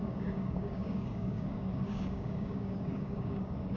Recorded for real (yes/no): no